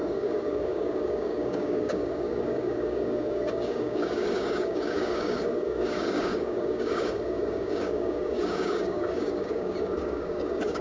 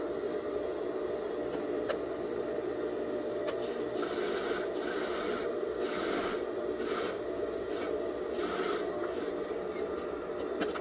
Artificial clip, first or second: first